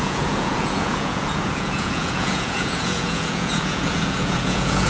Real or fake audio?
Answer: fake